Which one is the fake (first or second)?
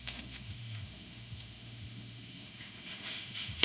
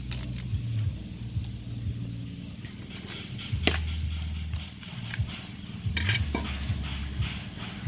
first